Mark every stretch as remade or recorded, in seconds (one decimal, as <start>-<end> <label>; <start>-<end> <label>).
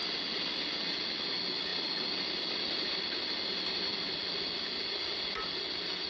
0.0-1.7 recorded; 1.7-4.2 remade; 4.2-6.1 recorded